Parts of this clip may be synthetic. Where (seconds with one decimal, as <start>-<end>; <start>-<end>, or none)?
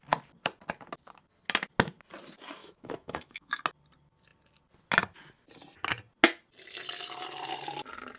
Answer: 2.6-3.6